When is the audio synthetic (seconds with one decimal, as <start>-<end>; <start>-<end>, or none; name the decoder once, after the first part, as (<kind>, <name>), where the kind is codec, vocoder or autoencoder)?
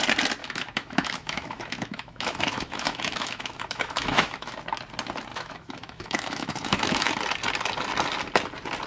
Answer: 0.4-4.5 (autoencoder, DAC-VAE); 5.3-7.1